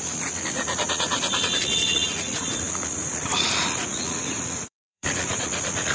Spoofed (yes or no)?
yes